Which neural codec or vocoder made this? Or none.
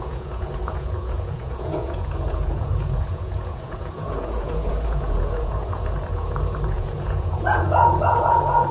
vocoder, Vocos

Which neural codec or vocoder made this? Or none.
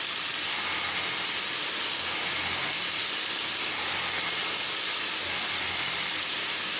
none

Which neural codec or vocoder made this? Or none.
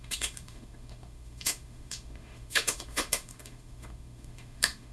autoencoder, DAC-VAE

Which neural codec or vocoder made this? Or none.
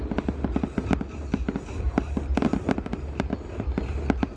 none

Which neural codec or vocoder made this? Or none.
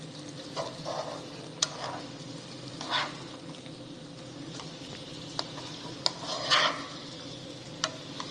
none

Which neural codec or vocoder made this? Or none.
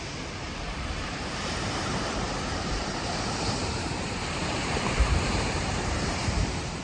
vocoder, BigVGAN v2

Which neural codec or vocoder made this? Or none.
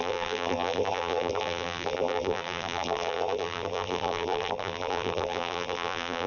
vocoder, BigVGAN v2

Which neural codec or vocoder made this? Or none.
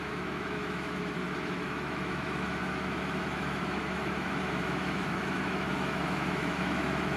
autoencoder, DAC-VAE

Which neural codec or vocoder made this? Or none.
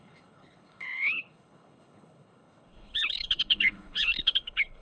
codec, HILCodec